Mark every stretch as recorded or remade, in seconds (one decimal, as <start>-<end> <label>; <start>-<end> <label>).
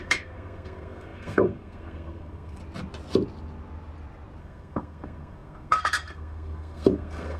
0.0-2.6 remade; 2.6-4.4 recorded; 4.4-7.4 remade